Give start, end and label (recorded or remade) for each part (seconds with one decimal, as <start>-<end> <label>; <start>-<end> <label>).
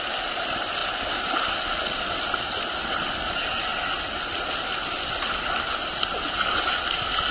0.0-7.3 recorded